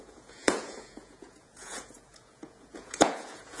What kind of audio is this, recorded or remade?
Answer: remade